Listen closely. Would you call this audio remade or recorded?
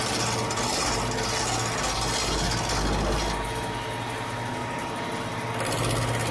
recorded